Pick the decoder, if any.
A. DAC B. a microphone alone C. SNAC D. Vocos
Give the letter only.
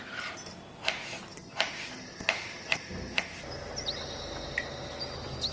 B